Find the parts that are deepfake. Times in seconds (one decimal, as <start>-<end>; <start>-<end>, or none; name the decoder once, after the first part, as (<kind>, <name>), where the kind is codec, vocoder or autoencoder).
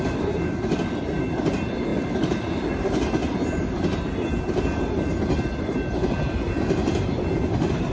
none